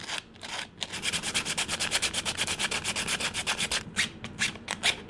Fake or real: real